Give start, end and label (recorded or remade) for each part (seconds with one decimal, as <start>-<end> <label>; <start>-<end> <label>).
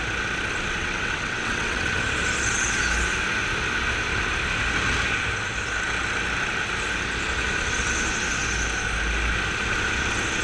0.0-0.8 recorded; 0.8-2.0 remade; 2.0-10.4 recorded